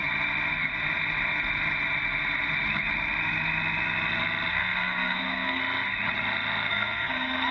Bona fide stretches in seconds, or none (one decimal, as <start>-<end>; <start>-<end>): 0.0-4.5; 5.6-6.7